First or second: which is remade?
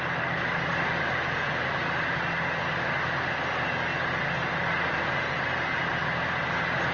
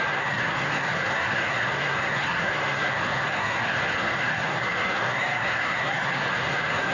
second